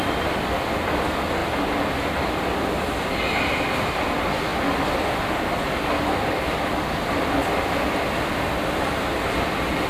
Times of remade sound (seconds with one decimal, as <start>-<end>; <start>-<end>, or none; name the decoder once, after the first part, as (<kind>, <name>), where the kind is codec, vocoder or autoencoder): none